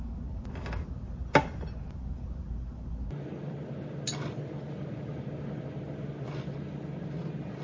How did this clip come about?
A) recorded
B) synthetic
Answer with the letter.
A